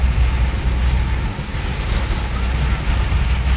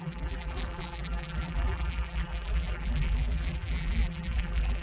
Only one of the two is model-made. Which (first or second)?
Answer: second